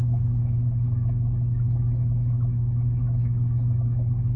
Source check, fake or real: fake